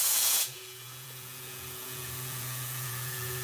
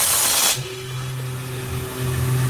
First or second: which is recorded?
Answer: second